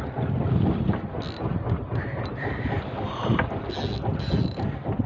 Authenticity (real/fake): real